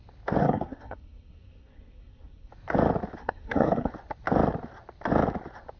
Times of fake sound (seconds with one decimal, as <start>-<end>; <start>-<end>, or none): 0.4-2.5; 3.2-3.9